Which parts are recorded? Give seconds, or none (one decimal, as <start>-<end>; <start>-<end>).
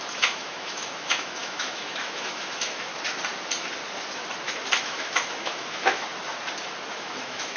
2.9-4.8; 6.1-6.9